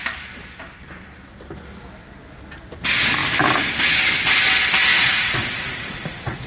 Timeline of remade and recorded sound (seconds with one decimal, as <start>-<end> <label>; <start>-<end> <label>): 0.0-4.9 recorded; 4.9-6.5 remade